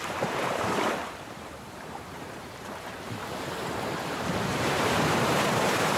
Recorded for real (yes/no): no